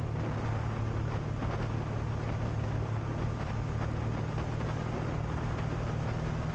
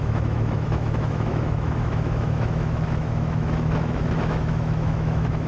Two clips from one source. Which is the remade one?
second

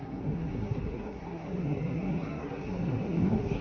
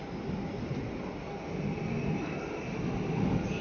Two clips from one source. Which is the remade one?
first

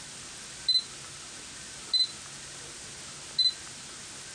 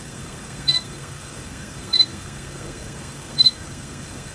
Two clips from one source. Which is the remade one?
second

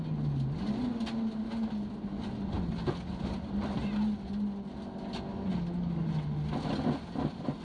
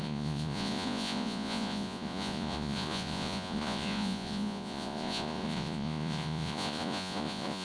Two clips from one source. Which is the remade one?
second